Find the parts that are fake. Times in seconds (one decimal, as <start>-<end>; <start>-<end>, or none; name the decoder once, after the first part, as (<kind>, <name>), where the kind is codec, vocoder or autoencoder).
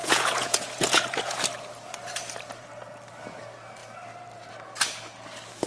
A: 0.0-1.4 (vocoder, Vocos)